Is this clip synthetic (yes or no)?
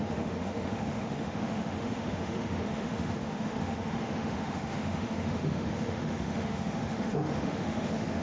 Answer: yes